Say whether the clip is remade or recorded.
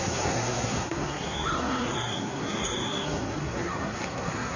remade